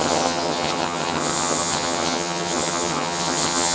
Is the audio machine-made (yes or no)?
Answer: yes